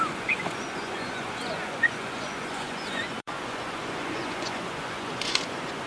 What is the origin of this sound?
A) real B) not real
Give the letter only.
B